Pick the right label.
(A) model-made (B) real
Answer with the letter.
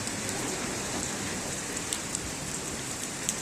A